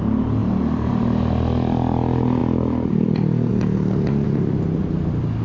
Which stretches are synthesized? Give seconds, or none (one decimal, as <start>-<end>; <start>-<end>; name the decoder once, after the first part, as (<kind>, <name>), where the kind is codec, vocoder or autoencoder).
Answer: none

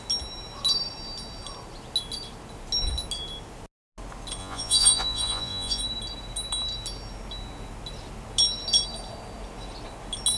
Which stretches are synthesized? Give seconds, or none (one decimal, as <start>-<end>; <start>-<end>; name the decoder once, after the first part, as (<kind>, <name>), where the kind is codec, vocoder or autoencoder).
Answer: 4.4-5.8 (vocoder, Vocos)